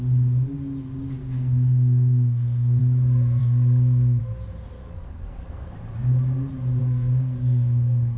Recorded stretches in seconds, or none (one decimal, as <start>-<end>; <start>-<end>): 0.0-1.2; 2.8-3.4; 4.2-4.8; 5.7-6.8